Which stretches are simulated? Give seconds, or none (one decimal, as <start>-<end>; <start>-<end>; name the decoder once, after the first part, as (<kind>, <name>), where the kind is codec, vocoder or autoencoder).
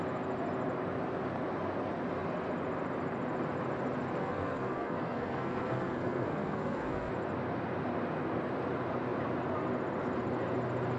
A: 4.2-7.1 (codec, SNAC)